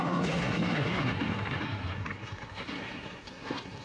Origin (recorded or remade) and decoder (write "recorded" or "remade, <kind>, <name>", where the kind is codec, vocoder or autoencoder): remade, codec, SNAC